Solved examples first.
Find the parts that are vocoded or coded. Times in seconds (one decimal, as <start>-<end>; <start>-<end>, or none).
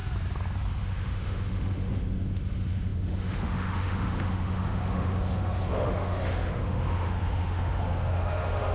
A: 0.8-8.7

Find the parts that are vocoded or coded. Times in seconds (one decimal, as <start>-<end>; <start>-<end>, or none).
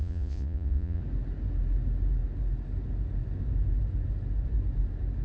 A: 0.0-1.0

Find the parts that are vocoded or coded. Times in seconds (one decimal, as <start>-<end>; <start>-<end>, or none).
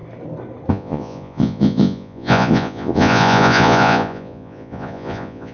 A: 0.7-5.5